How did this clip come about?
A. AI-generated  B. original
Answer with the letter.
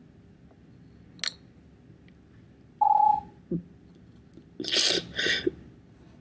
B